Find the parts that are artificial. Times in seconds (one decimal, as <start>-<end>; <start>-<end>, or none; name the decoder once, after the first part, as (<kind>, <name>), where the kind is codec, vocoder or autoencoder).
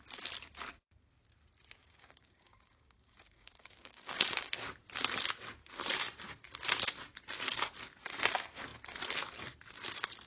1.8-4.5 (codec, DAC)